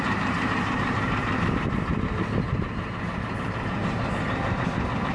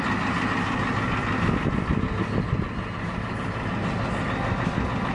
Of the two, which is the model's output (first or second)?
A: first